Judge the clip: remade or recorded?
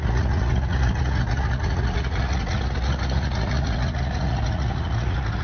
remade